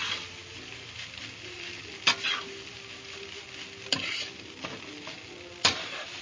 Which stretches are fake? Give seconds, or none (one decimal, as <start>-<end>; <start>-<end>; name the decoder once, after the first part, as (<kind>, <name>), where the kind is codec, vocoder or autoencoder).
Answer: none